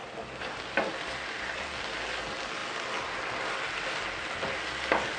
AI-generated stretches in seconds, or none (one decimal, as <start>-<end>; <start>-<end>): none